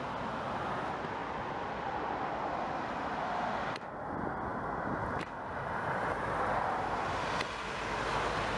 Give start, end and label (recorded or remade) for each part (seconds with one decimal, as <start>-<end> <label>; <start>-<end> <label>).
0.0-8.6 recorded